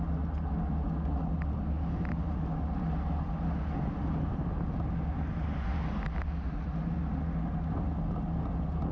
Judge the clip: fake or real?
real